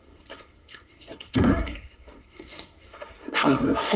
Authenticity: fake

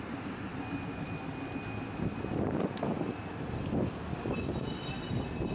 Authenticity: real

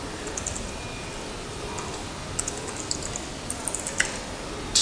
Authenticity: real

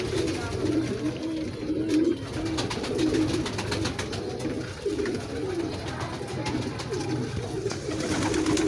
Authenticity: real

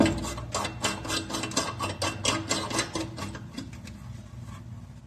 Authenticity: real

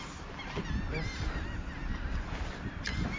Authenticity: real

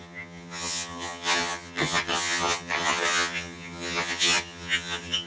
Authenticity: fake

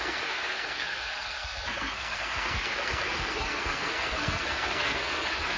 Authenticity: fake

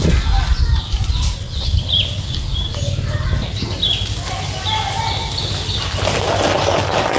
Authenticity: real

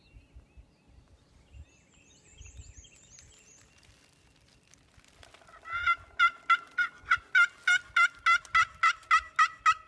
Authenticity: real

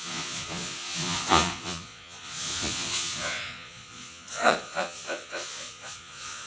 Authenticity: fake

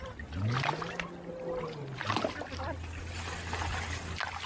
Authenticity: real